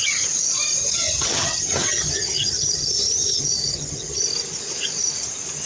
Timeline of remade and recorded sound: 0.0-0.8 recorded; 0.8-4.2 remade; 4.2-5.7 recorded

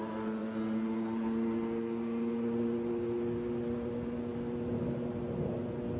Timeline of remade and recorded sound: 0.0-6.0 recorded

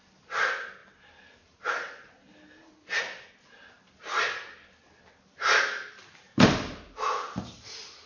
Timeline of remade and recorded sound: 0.0-8.1 recorded